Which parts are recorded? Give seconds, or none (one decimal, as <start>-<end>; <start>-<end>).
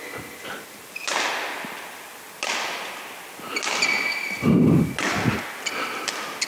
0.0-6.5